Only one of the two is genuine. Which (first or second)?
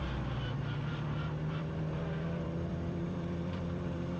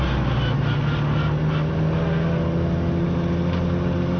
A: second